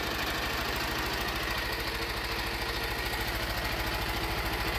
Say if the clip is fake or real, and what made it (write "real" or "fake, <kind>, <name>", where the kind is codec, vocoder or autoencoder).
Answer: real